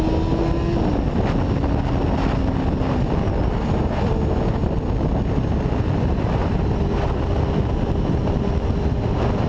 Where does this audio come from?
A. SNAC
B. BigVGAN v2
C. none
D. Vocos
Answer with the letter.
C